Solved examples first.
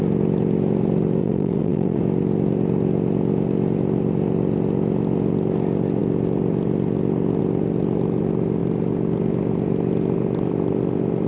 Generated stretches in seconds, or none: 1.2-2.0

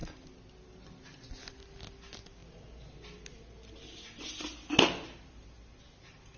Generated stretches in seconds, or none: none

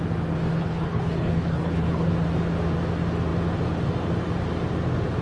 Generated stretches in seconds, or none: 0.5-2.1

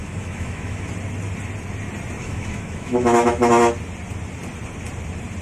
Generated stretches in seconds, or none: 0.0-0.9; 2.2-3.7

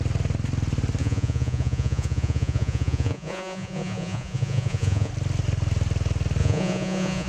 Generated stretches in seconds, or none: 1.0-5.1; 6.4-7.3